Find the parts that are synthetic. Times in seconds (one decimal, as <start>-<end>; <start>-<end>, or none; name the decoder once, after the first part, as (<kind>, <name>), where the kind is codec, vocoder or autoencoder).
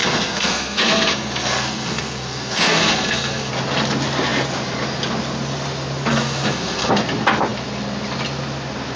0.0-3.5 (codec, SNAC); 6.1-6.9